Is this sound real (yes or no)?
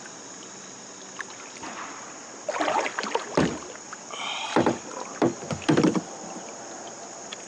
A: yes